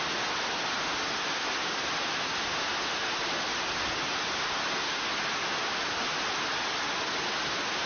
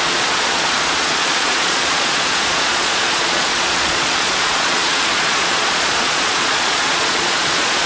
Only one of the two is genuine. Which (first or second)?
first